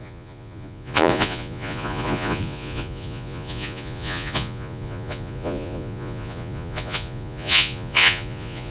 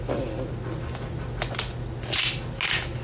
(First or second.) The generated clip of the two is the first